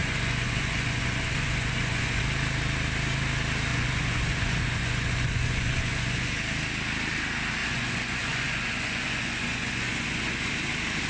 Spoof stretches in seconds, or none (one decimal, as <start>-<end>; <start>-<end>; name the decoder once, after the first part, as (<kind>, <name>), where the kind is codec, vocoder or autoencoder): 0.0-2.2 (vocoder, Vocos); 3.7-6.3; 7.6-10.5